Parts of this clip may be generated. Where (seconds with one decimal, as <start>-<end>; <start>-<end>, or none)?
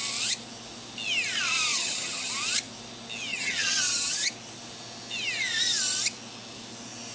1.7-2.3; 3.3-4.3